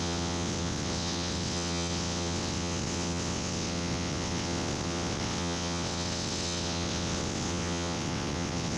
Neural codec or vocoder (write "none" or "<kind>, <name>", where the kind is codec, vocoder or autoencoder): vocoder, WaveNeXt